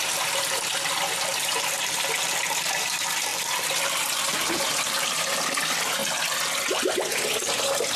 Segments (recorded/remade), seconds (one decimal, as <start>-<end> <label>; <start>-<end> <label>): 0.0-6.0 remade; 6.0-7.6 recorded; 7.6-8.0 remade